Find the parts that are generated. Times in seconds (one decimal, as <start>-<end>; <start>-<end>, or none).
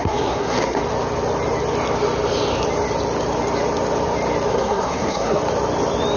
0.0-0.8; 4.5-5.4